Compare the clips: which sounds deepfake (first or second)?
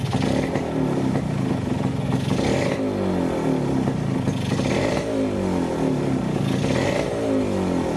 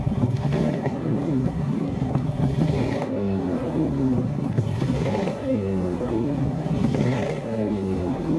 second